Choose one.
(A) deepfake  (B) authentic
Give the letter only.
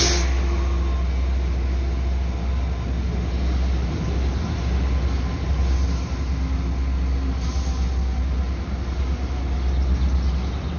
B